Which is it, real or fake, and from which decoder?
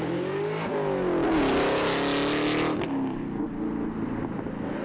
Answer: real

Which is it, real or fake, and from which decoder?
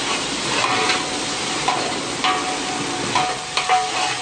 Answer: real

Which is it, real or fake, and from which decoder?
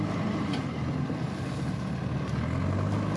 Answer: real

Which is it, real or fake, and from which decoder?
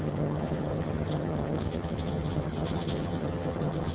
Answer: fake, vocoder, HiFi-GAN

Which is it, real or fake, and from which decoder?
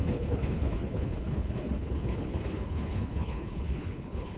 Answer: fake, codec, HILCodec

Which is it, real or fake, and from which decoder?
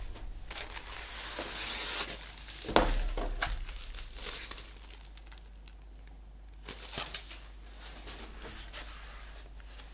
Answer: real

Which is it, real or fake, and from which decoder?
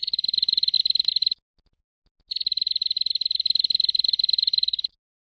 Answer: real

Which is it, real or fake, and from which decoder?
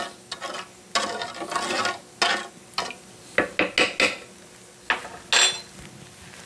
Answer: real